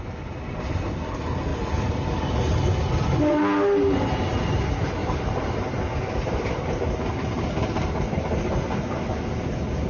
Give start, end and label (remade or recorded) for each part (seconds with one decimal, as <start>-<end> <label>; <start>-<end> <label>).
0.0-5.0 recorded; 5.0-8.1 remade; 8.1-9.9 recorded